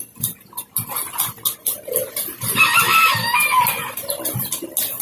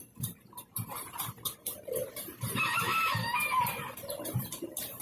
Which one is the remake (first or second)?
second